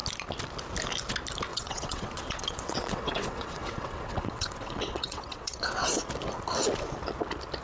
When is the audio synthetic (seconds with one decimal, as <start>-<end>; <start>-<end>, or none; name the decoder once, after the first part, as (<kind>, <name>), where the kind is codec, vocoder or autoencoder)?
1.5-6.0 (vocoder, WaveNeXt)